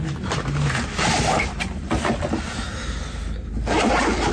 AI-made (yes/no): no